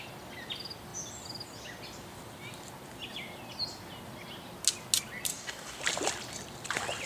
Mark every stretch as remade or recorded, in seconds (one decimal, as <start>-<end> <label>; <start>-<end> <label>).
0.0-5.3 recorded; 5.3-5.8 remade; 5.8-7.1 recorded